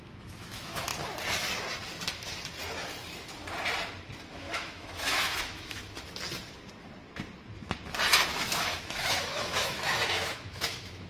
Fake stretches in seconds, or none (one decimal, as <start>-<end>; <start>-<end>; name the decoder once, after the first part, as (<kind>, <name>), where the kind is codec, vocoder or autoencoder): 0.0-0.9 (autoencoder, DAC-VAE); 4.3-5.8; 8.3-11.1